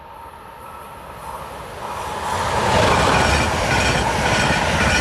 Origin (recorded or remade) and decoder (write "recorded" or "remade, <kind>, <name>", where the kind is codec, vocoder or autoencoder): recorded